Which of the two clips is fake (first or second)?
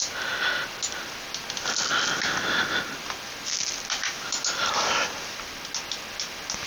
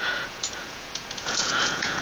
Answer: second